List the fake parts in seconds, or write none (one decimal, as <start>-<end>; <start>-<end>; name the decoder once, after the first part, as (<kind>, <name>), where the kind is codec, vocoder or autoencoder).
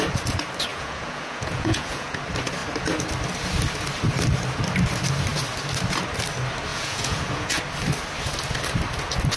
0.7-2.2 (vocoder, Vocos); 6.7-7.6